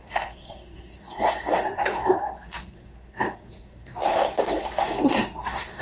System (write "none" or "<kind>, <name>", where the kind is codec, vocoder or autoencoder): codec, SNAC